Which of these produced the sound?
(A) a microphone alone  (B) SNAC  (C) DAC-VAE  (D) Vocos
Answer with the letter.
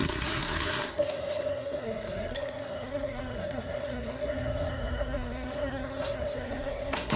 B